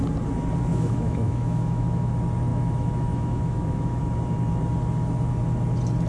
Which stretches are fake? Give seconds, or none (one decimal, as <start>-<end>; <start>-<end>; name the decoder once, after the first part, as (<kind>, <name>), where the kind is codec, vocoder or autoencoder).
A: 0.7-2.1 (autoencoder, DAC-VAE); 2.5-4.0